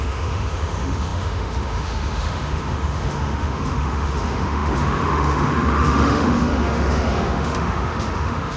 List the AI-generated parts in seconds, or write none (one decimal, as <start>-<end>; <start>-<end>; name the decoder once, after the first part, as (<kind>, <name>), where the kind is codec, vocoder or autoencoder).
0.0-8.6 (autoencoder, DAC-VAE)